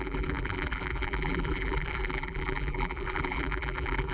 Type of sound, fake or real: fake